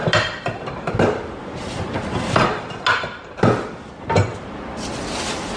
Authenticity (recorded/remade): recorded